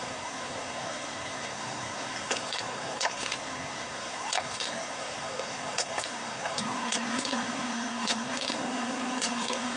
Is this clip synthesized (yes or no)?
yes